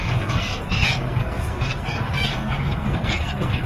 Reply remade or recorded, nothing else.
remade